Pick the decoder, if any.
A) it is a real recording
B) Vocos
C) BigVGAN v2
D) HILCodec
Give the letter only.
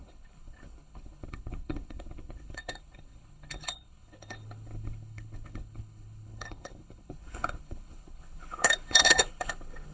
D